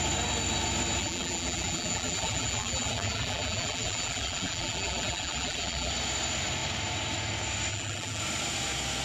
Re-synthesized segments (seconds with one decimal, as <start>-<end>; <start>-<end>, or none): 1.0-5.9; 7.7-8.2